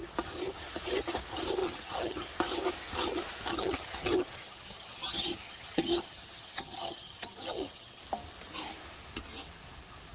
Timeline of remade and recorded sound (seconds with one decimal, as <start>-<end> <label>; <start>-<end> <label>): 0.0-1.6 recorded; 1.6-2.3 remade; 2.3-3.5 recorded; 3.5-8.0 remade; 8.0-10.1 recorded